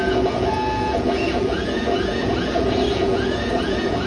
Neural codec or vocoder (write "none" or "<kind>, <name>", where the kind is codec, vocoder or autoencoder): vocoder, Vocos